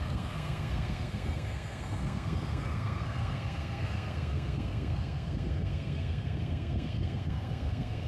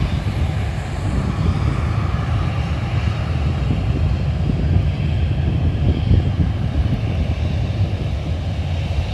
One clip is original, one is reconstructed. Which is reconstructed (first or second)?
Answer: first